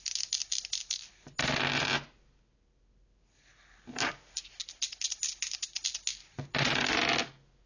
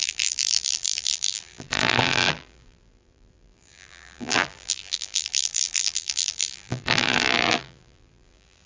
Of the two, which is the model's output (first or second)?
second